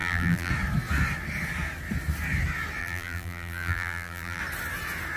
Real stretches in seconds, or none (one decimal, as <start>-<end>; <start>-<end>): 0.5-2.8; 4.4-5.2